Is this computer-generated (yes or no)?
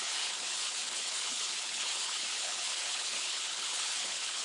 yes